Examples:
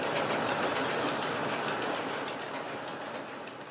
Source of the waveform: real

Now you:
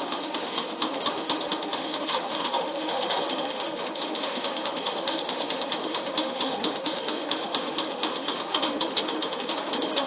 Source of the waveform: fake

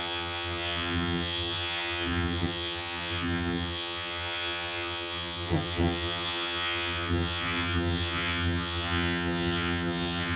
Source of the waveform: fake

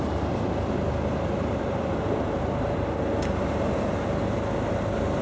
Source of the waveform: real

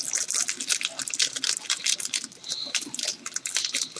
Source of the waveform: real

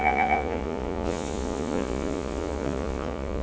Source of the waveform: fake